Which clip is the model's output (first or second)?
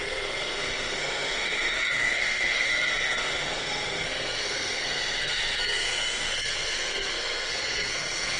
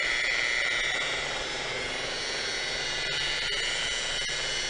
first